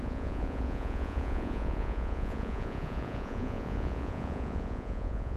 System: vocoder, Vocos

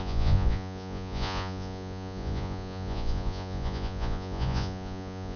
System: vocoder, Vocos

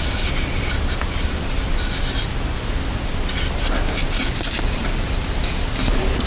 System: none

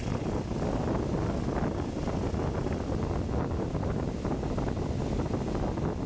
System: none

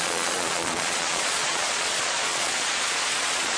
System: vocoder, Vocos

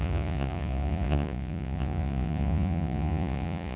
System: vocoder, Vocos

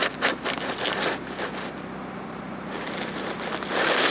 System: none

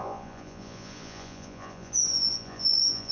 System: vocoder, Vocos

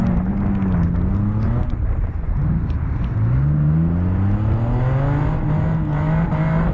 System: none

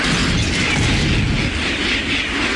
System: none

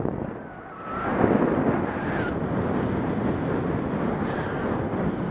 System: none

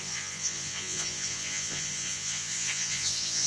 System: vocoder, Vocos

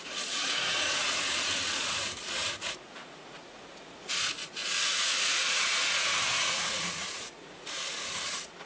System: vocoder, Vocos